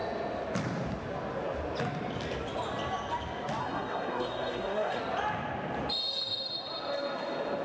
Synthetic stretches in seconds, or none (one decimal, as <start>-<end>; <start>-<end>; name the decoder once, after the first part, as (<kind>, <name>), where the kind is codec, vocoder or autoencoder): 3.6-5.0 (codec, SNAC)